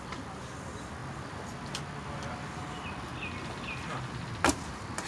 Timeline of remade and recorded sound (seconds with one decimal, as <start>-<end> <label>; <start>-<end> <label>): 0.0-5.1 recorded